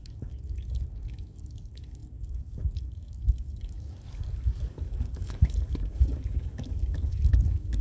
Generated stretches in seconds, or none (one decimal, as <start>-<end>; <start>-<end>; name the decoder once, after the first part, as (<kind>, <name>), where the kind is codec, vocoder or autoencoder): 0.0-7.8 (codec, DAC)